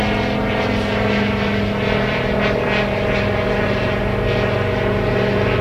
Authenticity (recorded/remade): recorded